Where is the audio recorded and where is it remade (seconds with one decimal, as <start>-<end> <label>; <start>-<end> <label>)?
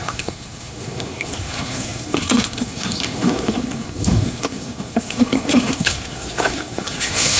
0.0-7.4 remade